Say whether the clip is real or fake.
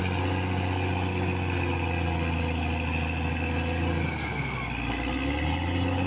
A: real